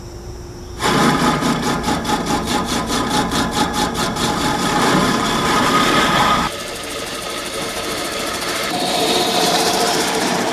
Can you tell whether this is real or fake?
fake